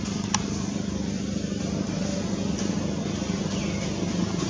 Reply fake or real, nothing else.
real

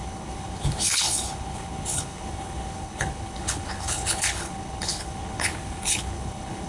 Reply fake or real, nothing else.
fake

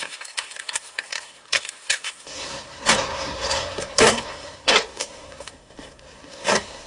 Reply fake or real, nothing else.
fake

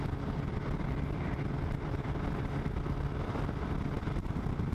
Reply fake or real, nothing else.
real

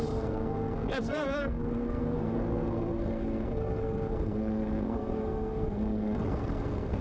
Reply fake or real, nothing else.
fake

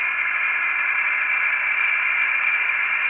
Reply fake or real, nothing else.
real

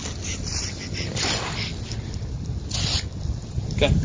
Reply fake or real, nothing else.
real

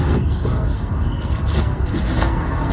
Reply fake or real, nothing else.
fake